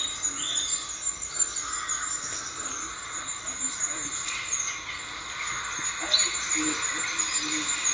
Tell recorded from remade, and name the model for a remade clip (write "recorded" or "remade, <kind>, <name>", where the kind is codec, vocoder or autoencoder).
recorded